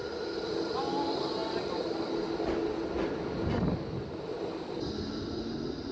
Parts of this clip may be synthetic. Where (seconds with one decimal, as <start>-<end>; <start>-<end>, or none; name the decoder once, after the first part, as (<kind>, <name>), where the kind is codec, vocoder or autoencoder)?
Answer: none